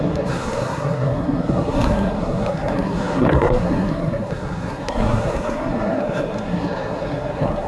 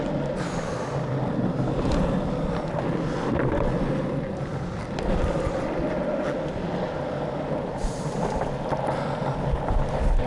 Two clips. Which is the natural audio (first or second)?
second